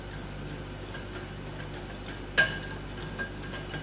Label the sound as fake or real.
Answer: real